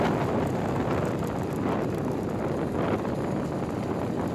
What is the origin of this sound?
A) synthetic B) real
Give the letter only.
B